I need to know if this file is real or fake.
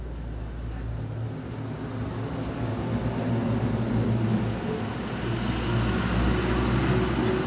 real